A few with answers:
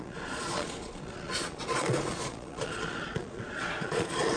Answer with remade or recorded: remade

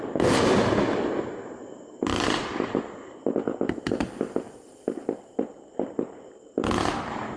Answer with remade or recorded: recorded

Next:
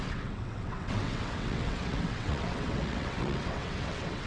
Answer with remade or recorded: remade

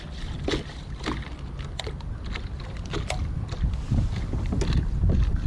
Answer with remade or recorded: recorded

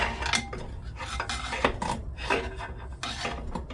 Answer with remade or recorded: recorded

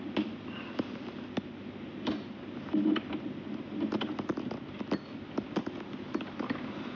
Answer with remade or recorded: recorded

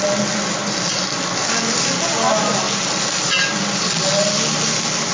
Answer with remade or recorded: recorded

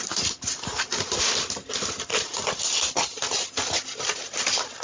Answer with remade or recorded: remade